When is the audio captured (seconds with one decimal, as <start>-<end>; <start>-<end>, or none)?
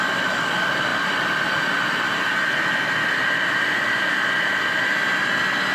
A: 0.0-5.7